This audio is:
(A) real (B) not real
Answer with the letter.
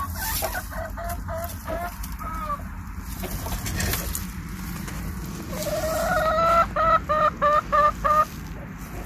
A